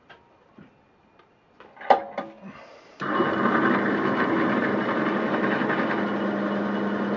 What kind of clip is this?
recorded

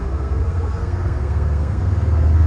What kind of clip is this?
remade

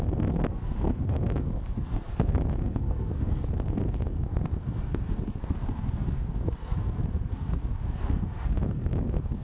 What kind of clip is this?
remade